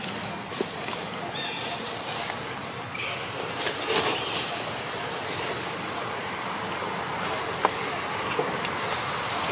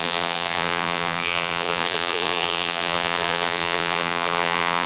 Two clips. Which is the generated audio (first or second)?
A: second